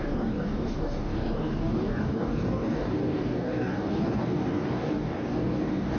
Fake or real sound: fake